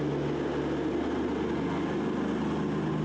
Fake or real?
real